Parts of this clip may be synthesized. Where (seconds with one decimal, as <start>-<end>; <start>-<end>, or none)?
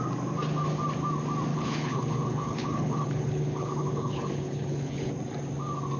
1.5-5.1